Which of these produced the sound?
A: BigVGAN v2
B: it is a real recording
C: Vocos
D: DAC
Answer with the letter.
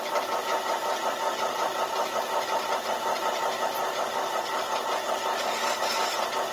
B